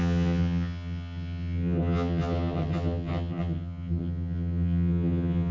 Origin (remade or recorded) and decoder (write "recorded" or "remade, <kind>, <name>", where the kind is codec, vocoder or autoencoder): remade, vocoder, HiFi-GAN